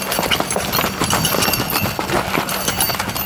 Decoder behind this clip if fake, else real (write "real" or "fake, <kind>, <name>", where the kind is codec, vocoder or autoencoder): real